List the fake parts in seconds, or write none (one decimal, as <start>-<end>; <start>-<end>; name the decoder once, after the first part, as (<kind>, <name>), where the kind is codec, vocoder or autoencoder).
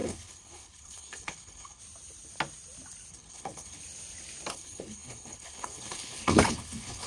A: 0.0-1.8 (codec, HILCodec); 3.1-3.8; 4.5-7.1